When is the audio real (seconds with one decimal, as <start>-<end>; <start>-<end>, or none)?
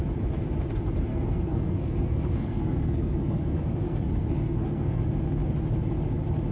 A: 0.0-1.1; 5.0-6.5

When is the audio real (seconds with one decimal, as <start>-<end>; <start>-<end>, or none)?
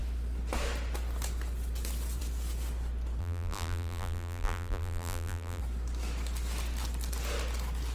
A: 0.0-3.2; 5.6-7.9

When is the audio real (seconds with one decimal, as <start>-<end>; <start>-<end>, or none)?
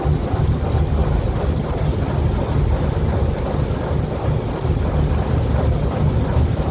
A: 0.0-6.7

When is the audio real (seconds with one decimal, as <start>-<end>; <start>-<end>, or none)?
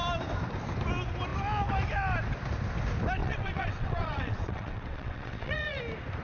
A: 0.0-3.2; 5.8-6.2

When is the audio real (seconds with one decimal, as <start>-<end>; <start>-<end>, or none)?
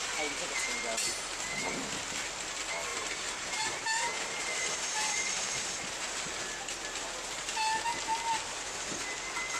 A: 0.0-2.9; 5.7-9.6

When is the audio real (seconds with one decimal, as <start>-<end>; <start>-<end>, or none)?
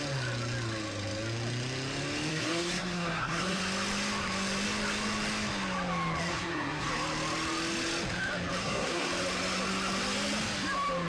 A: 0.0-2.3; 3.6-6.3; 6.9-8.6; 9.1-11.1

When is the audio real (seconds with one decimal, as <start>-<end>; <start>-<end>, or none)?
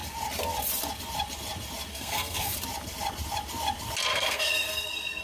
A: 0.0-1.9; 2.5-4.1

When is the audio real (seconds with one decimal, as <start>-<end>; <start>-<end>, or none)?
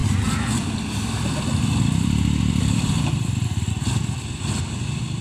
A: none